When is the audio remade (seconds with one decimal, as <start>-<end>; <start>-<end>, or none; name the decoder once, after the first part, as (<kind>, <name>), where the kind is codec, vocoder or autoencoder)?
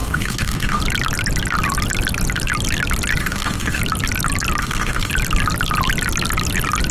0.0-0.8 (codec, DAC); 3.2-3.8; 4.6-5.1